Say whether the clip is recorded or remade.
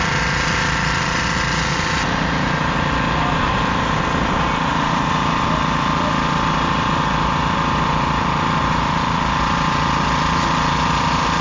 recorded